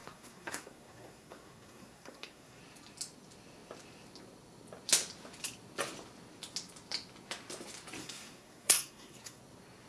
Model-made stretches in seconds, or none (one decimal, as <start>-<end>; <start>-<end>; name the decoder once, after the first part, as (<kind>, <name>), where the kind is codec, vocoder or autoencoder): 0.0-2.6 (codec, SNAC); 8.0-9.4